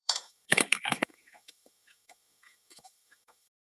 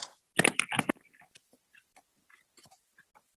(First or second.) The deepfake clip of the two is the first